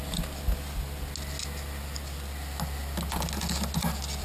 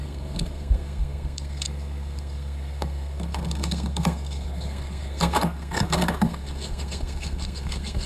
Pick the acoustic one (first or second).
first